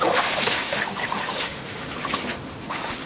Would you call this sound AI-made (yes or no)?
yes